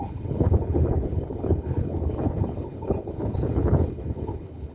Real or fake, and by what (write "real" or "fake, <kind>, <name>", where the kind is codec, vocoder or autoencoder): fake, codec, HILCodec